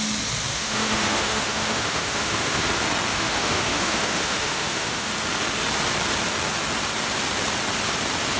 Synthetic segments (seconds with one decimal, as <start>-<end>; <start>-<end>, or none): 0.5-2.7; 3.1-5.1